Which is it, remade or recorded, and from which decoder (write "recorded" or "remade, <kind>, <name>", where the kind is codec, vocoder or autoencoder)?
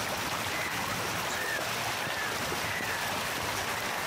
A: recorded